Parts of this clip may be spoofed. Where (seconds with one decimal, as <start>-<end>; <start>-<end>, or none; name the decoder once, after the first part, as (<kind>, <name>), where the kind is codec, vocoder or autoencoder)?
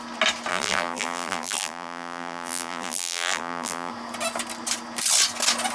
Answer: 0.5-3.9 (vocoder, BigVGAN v2)